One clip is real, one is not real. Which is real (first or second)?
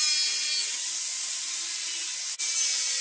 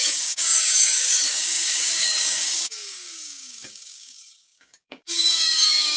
first